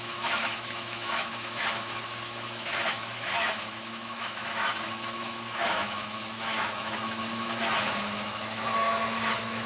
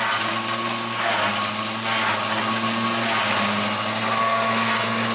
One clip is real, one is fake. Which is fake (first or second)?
first